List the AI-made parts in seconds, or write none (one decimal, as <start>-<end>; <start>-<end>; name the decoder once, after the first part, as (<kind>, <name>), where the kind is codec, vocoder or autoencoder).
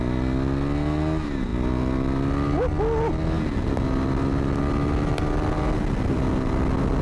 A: none